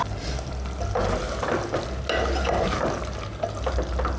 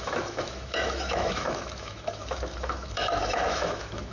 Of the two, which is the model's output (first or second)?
second